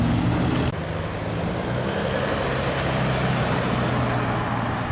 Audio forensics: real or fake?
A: real